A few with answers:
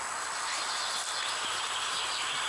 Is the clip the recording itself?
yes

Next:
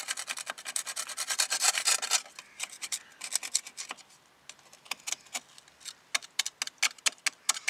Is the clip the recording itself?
yes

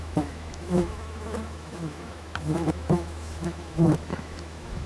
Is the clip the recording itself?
no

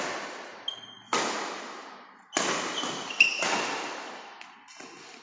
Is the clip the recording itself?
yes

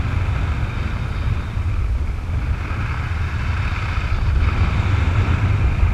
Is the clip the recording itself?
yes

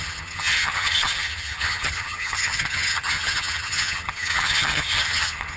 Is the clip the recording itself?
no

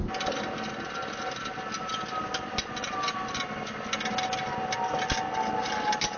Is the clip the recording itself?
yes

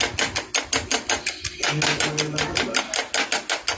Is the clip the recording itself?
yes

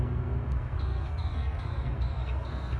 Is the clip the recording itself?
no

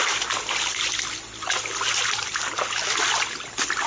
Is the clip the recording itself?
yes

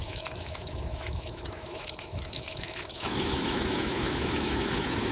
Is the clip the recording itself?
no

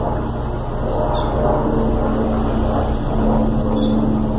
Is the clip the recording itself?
yes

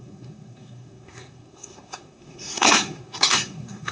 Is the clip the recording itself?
no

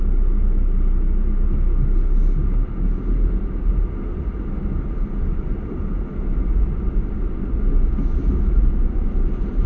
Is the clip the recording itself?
yes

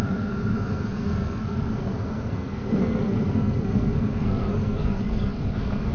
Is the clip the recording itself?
no